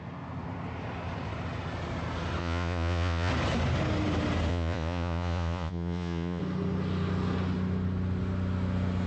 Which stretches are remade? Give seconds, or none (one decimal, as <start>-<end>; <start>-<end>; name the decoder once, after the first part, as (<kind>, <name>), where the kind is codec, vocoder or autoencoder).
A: 2.4-3.3 (vocoder, Vocos); 4.5-6.4